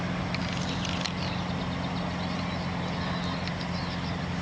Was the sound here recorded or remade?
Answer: recorded